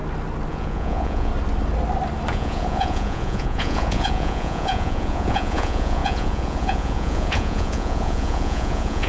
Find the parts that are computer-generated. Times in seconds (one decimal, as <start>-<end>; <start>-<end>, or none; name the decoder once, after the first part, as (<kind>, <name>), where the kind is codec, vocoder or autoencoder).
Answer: 0.5-1.3 (vocoder, Vocos); 2.3-9.1